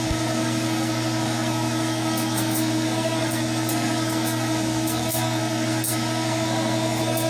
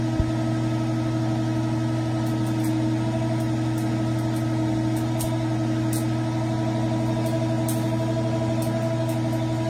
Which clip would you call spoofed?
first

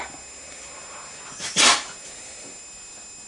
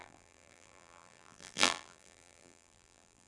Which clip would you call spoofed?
second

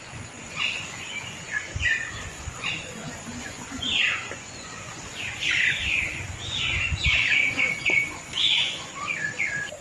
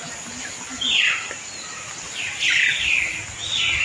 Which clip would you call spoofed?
first